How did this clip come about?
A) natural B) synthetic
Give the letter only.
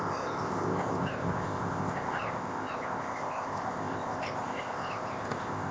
B